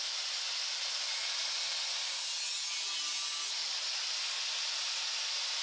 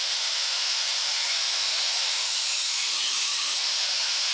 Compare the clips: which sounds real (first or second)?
first